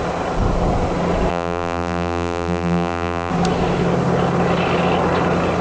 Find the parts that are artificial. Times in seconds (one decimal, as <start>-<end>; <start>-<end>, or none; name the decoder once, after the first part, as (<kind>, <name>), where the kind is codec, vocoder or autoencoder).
1.3-3.3 (vocoder, BigVGAN v2)